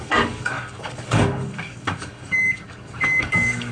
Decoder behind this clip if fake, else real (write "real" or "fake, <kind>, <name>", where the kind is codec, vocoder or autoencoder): fake, codec, DAC